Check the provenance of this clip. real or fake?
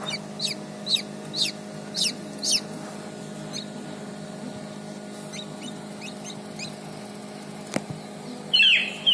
real